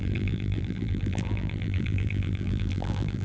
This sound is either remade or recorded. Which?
remade